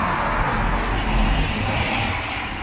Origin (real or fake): real